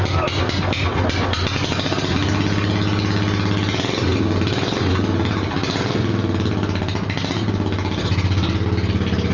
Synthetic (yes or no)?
no